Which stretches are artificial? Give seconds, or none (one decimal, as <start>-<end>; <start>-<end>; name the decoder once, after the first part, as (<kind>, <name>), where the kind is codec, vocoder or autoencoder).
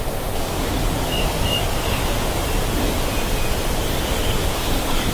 0.0-2.0 (codec, DAC); 4.1-5.1